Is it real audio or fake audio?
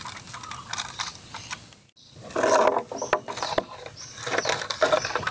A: real